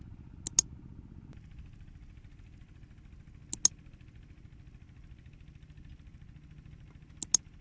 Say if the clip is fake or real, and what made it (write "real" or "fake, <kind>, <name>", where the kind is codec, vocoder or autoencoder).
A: real